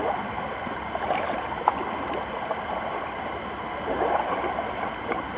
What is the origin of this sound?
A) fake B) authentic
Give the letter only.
B